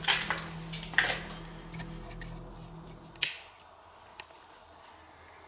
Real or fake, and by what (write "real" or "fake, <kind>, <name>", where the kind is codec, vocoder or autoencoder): real